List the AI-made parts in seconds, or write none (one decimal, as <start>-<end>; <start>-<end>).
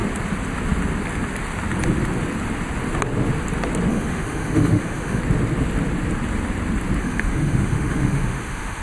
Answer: 3.9-5.2; 7.0-8.8